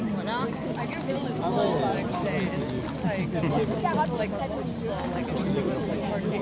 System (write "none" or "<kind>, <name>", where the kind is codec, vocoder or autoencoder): none